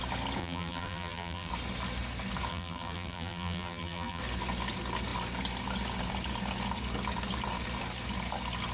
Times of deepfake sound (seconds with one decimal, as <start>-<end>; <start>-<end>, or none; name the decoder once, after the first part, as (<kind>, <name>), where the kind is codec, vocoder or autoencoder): 0.4-1.5 (vocoder, BigVGAN v2); 2.5-4.2